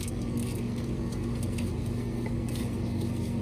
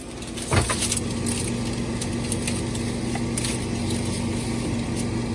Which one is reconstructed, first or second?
first